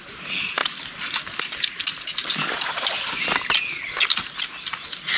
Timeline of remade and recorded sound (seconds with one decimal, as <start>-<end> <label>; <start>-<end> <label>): 0.0-5.2 recorded